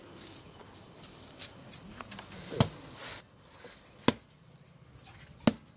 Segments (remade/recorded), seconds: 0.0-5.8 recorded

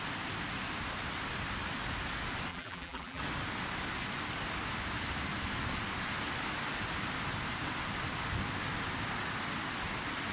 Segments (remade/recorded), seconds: 0.0-2.5 recorded; 2.5-3.2 remade; 3.2-10.3 recorded

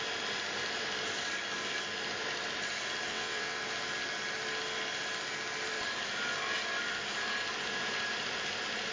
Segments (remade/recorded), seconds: 0.0-3.1 recorded; 3.1-3.6 remade; 3.6-8.9 recorded

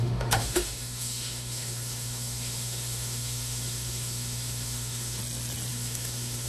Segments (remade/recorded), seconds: 0.0-5.2 remade; 5.2-5.7 recorded; 5.7-6.5 remade

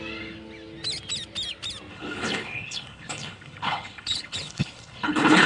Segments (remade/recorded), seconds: 0.0-1.9 recorded; 1.9-5.5 remade